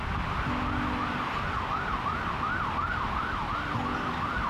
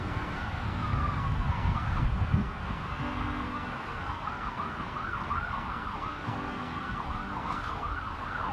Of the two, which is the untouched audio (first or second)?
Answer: first